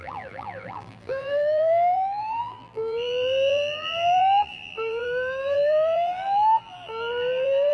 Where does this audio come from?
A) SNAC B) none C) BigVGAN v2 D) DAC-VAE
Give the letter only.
C